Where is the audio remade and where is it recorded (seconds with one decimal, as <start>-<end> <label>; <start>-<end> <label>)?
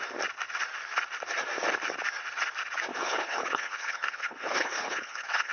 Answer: 0.0-2.9 recorded; 2.9-5.5 remade